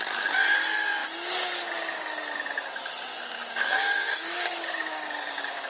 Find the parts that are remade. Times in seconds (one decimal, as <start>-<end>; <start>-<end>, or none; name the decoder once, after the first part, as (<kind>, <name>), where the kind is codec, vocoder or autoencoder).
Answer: 3.1-5.7 (codec, DAC)